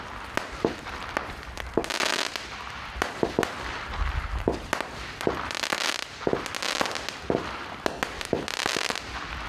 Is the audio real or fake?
real